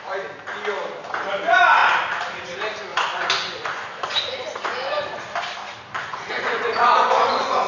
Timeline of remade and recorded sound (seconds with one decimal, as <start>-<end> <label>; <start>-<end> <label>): 0.0-2.9 recorded; 2.9-4.1 remade; 4.1-6.1 recorded; 6.1-7.7 remade